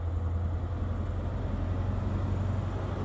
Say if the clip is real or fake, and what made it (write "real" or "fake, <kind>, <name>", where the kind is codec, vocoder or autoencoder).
real